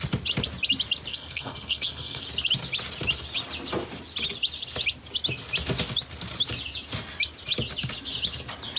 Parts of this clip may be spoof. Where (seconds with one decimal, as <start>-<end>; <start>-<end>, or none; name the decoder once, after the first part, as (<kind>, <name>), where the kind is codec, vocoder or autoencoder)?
1.1-2.2 (codec, SNAC)